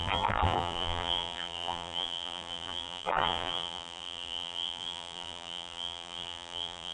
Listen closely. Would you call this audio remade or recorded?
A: remade